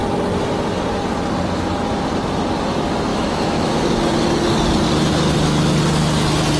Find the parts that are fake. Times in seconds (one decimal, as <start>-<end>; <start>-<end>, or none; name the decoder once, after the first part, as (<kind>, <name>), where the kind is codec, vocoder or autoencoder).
3.1-3.8 (autoencoder, DAC-VAE)